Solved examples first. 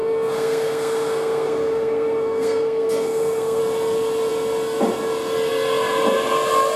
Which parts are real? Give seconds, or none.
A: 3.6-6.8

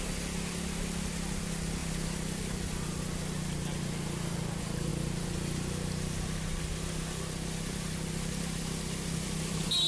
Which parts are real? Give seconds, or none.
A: 0.0-9.9